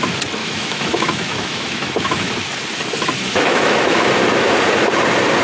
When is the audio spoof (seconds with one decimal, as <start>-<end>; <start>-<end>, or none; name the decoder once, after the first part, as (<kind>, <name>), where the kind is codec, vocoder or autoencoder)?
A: 0.4-2.3 (autoencoder, DAC-VAE); 3.2-4.0